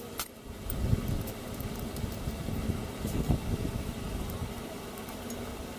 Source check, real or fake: real